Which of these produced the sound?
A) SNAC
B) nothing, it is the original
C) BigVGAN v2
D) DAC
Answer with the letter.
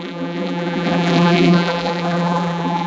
C